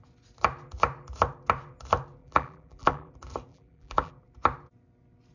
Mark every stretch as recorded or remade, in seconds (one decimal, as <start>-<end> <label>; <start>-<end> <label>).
0.0-2.2 recorded; 2.2-3.1 remade; 3.1-3.5 recorded; 3.5-4.1 remade; 4.1-5.3 recorded